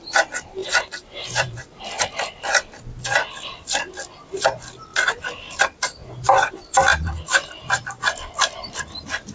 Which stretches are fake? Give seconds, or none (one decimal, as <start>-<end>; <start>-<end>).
0.6-1.8; 6.0-6.5; 6.9-8.0